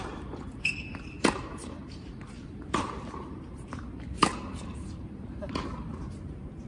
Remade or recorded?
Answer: remade